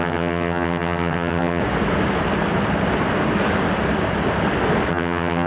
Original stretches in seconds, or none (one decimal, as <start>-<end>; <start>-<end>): 1.6-4.9